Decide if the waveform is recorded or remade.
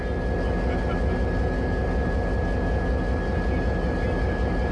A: recorded